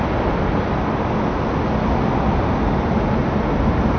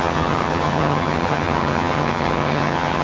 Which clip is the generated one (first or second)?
second